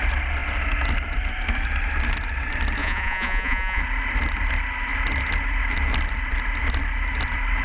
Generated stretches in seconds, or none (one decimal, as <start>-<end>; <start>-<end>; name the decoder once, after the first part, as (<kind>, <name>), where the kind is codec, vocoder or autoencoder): 2.8-3.8 (vocoder, Vocos)